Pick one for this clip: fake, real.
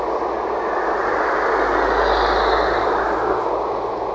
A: real